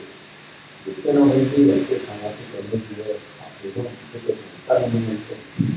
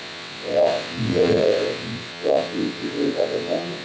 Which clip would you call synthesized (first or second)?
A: second